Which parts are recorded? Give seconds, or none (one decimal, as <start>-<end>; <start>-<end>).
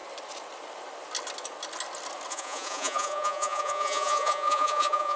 0.0-2.3